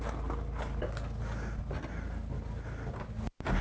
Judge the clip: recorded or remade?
recorded